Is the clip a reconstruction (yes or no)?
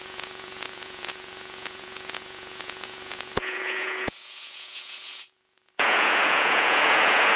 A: yes